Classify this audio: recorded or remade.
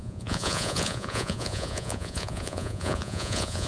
remade